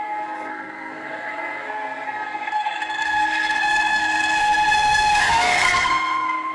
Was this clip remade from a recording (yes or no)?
yes